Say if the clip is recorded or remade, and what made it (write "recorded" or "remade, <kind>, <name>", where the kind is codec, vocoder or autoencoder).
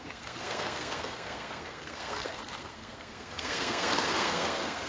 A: remade, codec, SNAC